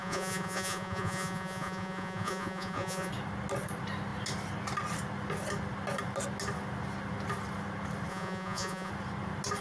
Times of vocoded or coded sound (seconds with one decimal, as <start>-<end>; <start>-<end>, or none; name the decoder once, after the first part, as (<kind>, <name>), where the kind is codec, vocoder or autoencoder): 0.0-3.1 (vocoder, Vocos); 8.1-8.9